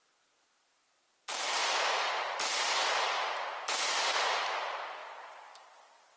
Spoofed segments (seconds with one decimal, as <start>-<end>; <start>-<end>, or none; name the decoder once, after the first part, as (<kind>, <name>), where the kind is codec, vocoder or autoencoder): 5.0-6.2 (vocoder, BigVGAN v2)